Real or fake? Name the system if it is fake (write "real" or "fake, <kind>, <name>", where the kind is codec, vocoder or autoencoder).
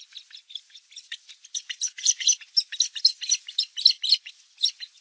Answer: real